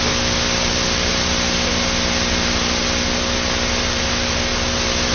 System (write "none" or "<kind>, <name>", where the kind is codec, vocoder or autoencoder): none